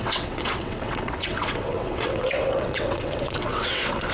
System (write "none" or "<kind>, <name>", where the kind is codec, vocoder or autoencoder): vocoder, WaveNeXt